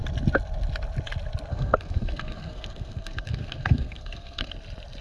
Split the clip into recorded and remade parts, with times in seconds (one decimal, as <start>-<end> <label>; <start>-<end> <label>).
0.0-1.5 recorded; 1.5-4.5 remade; 4.5-5.0 recorded